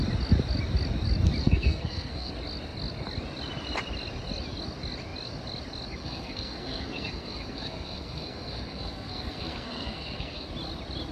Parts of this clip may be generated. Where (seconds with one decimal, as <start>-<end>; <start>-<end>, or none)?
1.4-2.3; 6.0-10.5

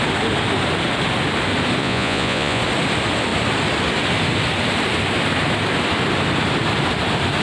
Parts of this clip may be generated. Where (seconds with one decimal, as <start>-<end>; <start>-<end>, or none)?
1.8-2.6